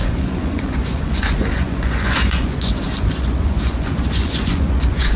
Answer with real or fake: fake